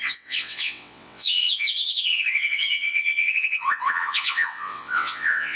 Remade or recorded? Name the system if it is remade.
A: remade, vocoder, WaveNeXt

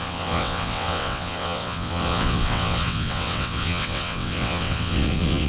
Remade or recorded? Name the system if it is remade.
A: remade, vocoder, WaveNeXt